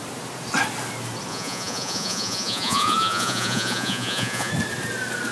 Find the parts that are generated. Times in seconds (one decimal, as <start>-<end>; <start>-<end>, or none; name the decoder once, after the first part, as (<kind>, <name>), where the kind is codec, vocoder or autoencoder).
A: 1.3-4.5 (vocoder, Vocos)